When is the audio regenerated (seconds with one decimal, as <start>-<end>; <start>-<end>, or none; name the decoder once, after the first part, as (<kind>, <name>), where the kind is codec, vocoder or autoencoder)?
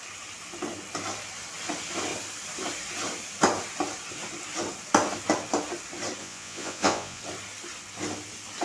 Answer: 6.2-7.2 (vocoder, Vocos)